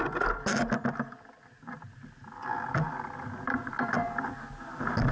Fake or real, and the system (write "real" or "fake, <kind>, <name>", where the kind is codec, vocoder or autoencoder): real